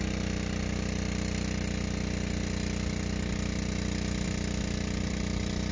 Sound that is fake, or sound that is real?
real